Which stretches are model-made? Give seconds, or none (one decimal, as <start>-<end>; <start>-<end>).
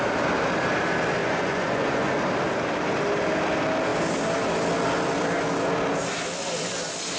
1.2-2.1